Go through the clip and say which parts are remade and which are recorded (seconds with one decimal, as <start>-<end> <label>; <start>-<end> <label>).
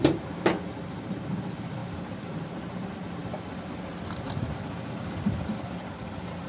0.0-1.8 recorded; 1.8-2.5 remade; 2.5-3.2 recorded; 3.2-6.5 remade